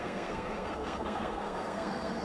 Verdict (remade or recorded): remade